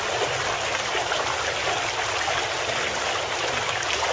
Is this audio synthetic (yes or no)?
no